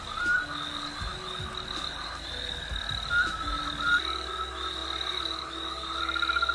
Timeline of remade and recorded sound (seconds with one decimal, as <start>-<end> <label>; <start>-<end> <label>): 0.0-6.5 recorded